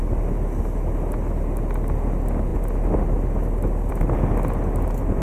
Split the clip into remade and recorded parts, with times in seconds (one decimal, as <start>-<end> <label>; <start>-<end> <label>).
0.0-5.2 recorded